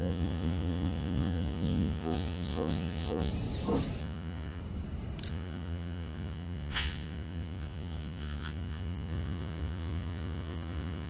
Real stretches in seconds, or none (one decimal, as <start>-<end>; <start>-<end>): 3.3-4.0; 4.6-5.3